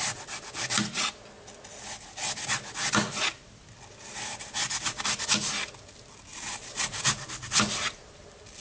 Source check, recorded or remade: recorded